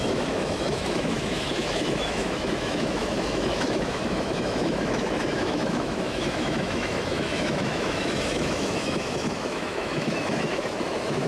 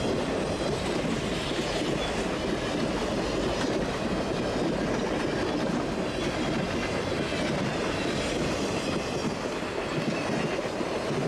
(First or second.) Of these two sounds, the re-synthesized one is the first